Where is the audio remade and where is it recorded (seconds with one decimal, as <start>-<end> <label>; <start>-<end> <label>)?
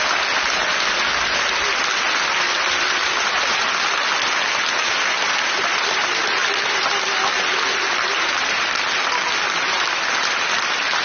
0.0-11.0 recorded